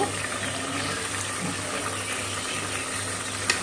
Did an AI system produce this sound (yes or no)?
no